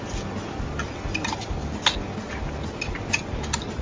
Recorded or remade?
recorded